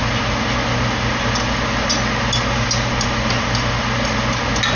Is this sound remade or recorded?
recorded